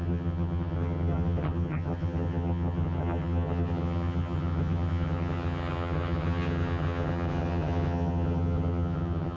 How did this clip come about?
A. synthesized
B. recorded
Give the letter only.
A